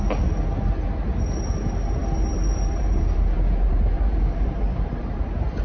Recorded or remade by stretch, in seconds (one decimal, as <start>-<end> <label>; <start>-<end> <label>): 0.0-2.0 recorded; 2.0-5.6 remade